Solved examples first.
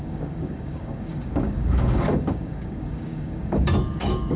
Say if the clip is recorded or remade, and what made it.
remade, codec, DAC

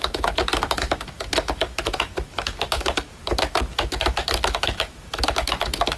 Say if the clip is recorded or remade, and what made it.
remade, autoencoder, DAC-VAE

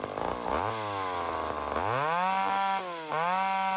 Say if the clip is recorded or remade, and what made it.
recorded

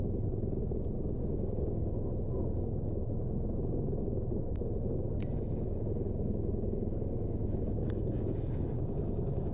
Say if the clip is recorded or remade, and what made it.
remade, autoencoder, DAC-VAE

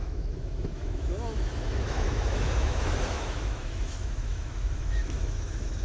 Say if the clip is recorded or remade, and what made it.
remade, autoencoder, DAC-VAE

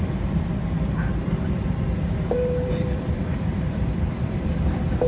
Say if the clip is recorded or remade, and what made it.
remade, vocoder, BigVGAN v2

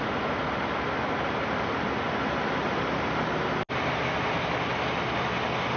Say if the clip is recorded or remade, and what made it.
recorded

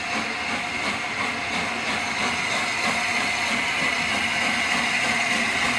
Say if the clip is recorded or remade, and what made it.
recorded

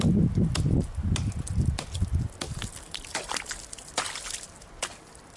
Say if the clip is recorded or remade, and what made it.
recorded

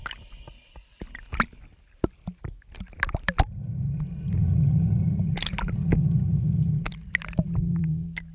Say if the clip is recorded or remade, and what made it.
recorded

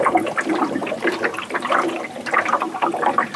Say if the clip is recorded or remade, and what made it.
recorded